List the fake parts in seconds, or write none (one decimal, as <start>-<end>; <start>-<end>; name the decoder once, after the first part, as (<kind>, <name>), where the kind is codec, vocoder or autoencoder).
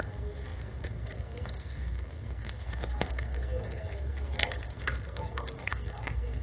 0.0-6.4 (codec, SNAC)